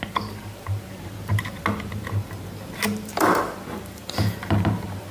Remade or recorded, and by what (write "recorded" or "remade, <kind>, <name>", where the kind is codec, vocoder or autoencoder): recorded